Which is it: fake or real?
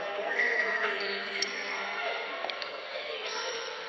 fake